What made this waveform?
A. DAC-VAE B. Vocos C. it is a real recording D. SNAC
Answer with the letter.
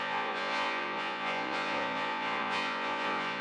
B